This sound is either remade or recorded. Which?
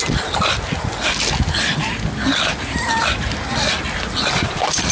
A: recorded